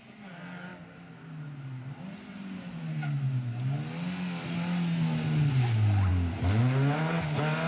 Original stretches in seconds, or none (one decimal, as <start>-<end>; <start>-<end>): 0.0-7.7